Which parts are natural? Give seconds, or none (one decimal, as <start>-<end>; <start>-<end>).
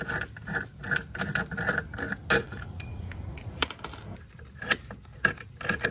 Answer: 0.0-2.4; 3.7-5.9